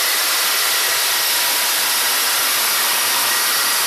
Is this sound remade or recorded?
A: recorded